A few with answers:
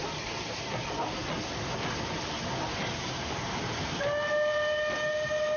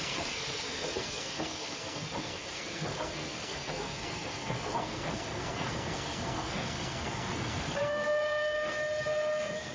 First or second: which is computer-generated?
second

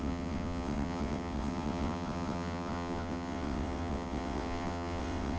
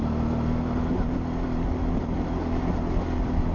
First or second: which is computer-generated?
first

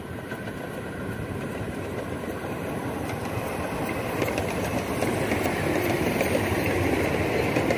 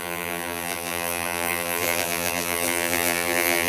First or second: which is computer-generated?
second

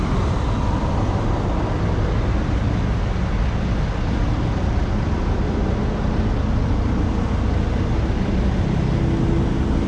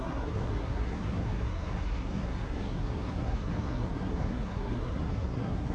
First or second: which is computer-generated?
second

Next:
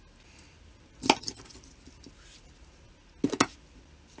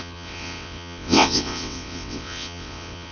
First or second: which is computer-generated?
second